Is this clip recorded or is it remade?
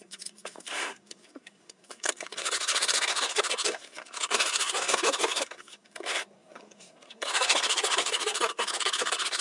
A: remade